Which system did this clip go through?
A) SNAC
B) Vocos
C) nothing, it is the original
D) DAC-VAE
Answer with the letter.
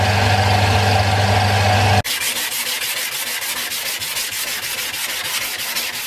C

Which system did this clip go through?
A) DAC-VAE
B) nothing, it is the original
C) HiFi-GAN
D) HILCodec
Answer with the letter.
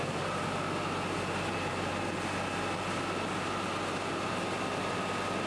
B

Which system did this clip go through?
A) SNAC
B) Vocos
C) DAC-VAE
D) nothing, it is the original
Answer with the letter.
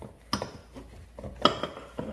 D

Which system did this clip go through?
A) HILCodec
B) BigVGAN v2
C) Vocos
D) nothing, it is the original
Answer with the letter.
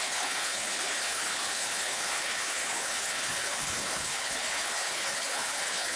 A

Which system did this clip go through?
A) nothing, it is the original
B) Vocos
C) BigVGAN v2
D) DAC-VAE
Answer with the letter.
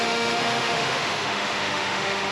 D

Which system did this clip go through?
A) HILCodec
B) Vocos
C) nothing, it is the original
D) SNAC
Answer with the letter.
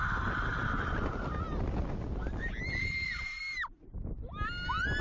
C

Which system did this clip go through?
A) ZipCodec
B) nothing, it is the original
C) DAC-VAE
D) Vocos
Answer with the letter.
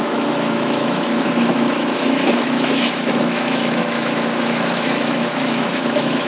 C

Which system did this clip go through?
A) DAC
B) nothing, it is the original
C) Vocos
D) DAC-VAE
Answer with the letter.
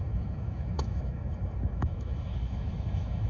D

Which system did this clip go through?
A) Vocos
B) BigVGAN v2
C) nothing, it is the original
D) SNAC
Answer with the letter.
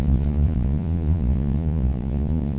A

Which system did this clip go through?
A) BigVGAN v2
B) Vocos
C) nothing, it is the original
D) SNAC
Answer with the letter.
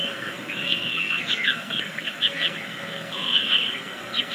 D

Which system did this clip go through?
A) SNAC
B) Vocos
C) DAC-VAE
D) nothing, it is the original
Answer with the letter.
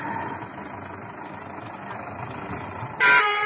D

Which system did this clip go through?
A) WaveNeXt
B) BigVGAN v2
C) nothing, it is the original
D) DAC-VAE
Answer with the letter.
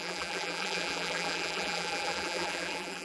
B